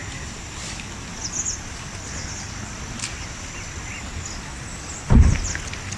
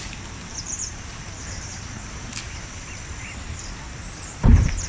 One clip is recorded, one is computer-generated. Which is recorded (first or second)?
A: first